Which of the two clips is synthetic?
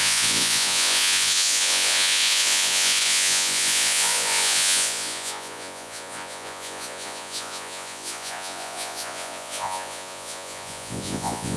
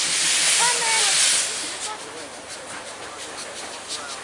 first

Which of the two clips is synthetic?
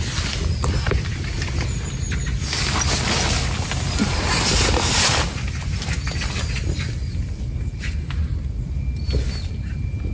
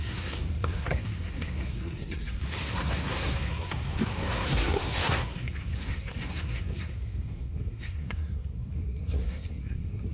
second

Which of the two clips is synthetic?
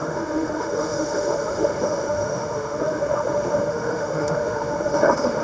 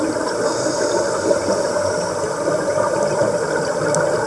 first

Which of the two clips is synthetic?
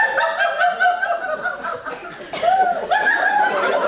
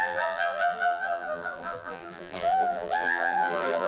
second